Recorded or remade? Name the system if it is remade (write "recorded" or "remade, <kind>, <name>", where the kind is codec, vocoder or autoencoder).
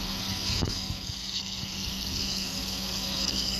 remade, codec, SNAC